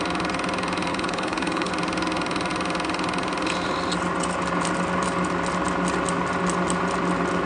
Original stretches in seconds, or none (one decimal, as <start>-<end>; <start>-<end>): 0.0-0.9; 1.7-7.5